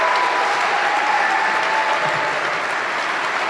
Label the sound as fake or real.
real